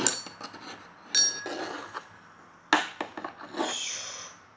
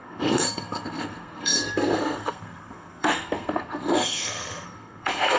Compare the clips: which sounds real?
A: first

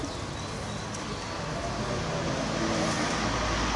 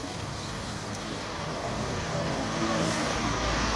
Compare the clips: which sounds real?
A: first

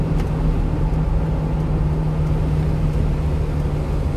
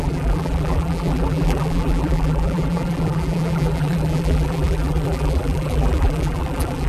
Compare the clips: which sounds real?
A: first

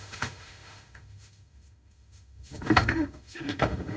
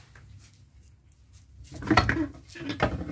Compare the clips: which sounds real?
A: second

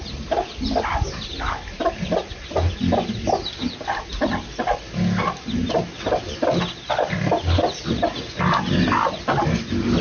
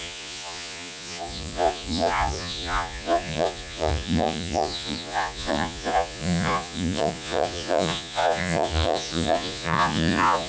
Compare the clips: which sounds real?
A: first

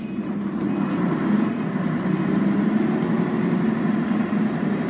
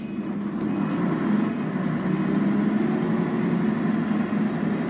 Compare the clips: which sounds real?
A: second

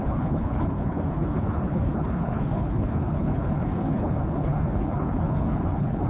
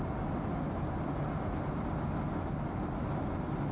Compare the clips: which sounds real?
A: second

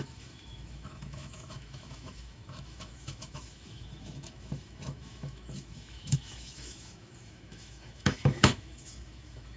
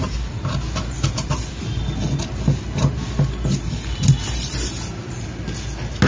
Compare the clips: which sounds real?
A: second